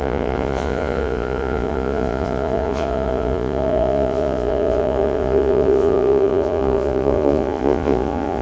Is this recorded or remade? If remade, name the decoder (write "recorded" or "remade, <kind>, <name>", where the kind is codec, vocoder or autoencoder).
remade, vocoder, Vocos